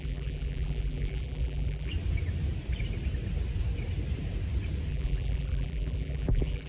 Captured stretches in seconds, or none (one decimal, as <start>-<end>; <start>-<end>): 1.9-4.9